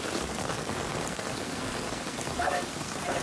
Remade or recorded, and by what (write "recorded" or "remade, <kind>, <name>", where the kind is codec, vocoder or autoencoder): remade, codec, SNAC